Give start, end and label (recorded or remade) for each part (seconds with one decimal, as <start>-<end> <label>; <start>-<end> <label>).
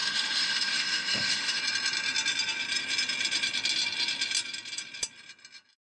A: 0.0-1.6 remade; 1.6-5.8 recorded